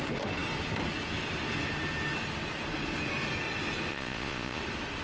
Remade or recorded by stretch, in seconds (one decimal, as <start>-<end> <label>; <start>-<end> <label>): 0.0-3.9 recorded; 3.9-4.6 remade; 4.6-5.0 recorded